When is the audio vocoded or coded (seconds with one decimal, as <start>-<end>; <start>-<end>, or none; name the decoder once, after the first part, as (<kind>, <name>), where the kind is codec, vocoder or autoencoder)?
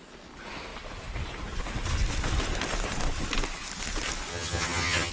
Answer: 4.3-5.1 (vocoder, HiFi-GAN)